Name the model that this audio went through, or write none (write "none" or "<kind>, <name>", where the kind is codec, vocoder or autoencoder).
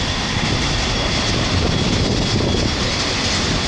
none